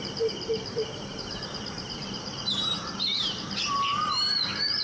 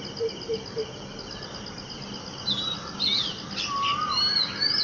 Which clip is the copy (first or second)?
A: first